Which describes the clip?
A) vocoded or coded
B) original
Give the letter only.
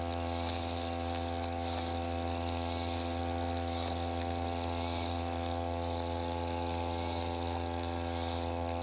B